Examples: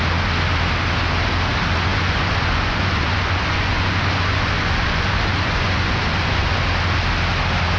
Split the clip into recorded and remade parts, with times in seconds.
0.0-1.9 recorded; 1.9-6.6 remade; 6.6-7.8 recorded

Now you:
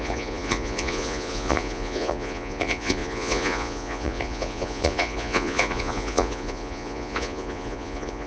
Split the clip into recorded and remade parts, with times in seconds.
0.0-8.3 remade

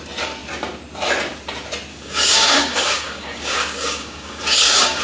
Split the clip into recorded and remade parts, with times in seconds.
0.0-1.9 recorded; 1.9-5.0 remade

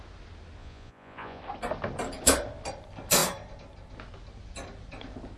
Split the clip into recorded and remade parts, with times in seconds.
0.0-0.6 recorded; 0.6-1.4 remade; 1.4-5.4 recorded

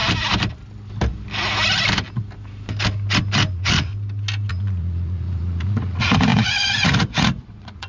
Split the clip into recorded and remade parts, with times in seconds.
0.0-3.5 recorded; 3.5-3.9 remade; 3.9-4.5 recorded; 4.5-7.9 remade

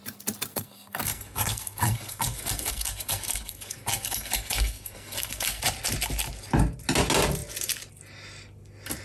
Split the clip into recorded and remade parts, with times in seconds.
0.0-0.5 recorded; 0.5-5.6 remade; 5.6-9.0 recorded

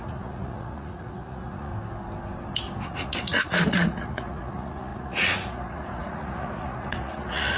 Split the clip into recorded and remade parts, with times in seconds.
0.0-1.7 remade; 1.7-2.8 recorded; 2.8-7.6 remade